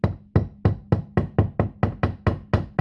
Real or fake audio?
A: real